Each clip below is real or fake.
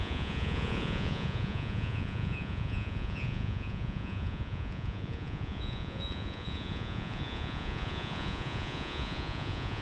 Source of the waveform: fake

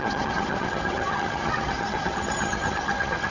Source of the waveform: fake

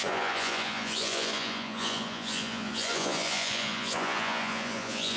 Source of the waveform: fake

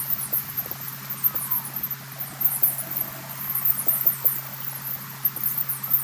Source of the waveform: real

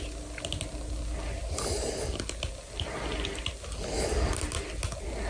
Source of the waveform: real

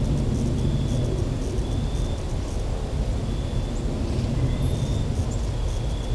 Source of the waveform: real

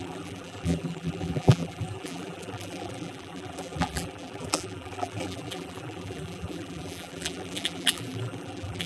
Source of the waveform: fake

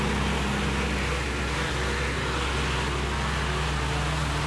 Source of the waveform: real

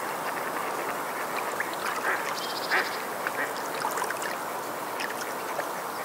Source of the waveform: real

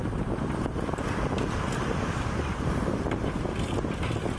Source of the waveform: real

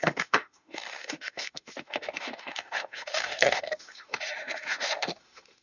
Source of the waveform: fake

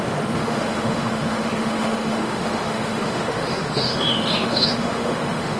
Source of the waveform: fake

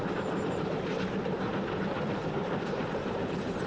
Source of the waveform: fake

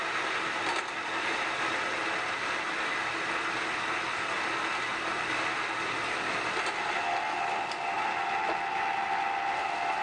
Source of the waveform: real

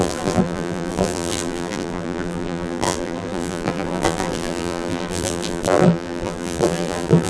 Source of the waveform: fake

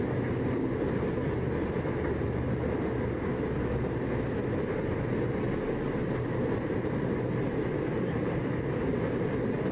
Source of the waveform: real